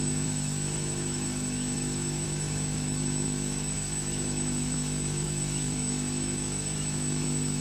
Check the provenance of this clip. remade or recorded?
remade